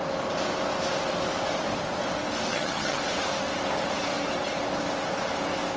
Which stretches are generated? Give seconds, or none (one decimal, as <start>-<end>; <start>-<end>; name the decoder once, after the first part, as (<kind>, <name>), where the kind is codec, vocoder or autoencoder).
2.5-3.0 (vocoder, HiFi-GAN)